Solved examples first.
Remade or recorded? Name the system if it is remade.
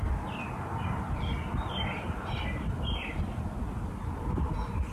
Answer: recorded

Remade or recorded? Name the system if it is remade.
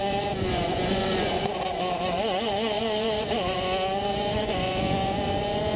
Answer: remade, vocoder, Vocos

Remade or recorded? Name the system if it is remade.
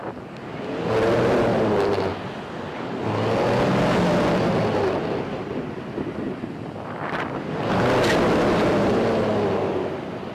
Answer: recorded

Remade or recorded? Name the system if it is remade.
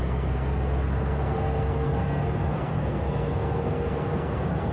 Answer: remade, codec, SNAC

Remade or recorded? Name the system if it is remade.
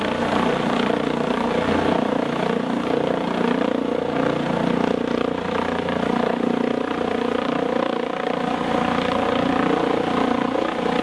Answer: recorded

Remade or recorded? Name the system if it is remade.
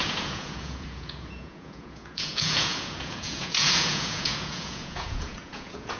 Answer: remade, vocoder, Vocos